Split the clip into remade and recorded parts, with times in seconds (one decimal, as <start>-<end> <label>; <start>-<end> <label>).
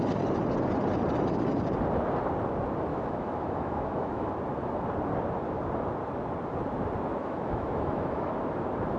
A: 0.0-2.9 recorded; 2.9-4.3 remade; 4.3-7.2 recorded; 7.2-8.3 remade; 8.3-9.0 recorded